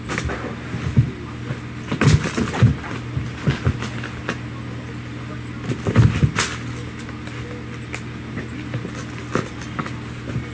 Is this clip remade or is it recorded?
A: recorded